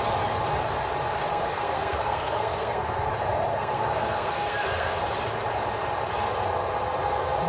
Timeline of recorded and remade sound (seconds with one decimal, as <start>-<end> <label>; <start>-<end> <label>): 0.0-1.3 recorded; 1.3-3.1 remade; 3.1-3.5 recorded; 3.5-5.0 remade; 5.0-7.5 recorded